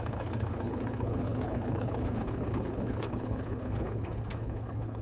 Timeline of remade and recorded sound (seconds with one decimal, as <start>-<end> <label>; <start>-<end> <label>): 0.0-5.0 remade